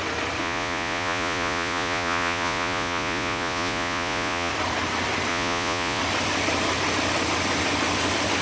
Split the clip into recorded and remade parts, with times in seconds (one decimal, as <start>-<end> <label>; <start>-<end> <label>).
0.0-0.4 recorded; 0.4-4.5 remade; 4.5-5.3 recorded; 5.3-6.0 remade; 6.0-8.4 recorded